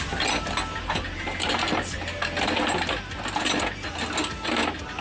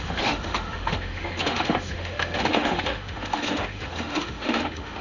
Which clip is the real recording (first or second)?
first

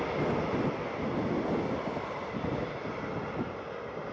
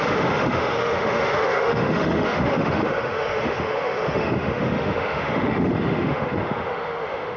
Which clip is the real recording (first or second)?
first